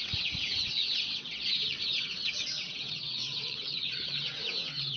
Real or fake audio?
fake